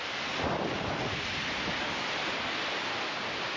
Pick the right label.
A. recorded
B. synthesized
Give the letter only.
A